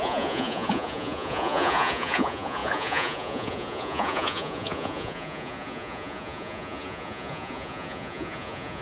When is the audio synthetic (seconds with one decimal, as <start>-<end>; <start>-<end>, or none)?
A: 0.0-8.8